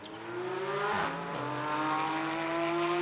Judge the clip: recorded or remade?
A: recorded